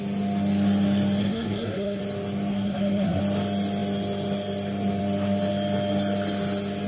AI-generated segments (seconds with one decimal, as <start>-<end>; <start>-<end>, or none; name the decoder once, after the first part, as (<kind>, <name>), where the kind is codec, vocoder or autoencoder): 1.2-2.0 (codec, SNAC); 2.5-3.2